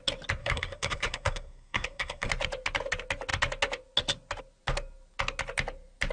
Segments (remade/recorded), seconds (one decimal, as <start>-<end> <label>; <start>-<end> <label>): 0.0-0.4 recorded; 0.4-2.3 remade; 2.3-6.1 recorded